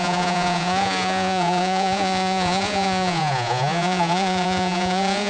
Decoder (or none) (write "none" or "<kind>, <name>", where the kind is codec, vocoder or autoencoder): vocoder, Vocos